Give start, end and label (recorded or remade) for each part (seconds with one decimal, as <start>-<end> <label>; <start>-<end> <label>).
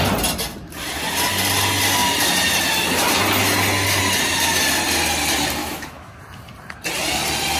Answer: 0.0-5.6 recorded; 5.6-6.2 remade; 6.2-7.6 recorded